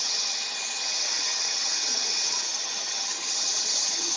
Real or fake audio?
fake